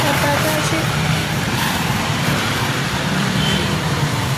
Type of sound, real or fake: fake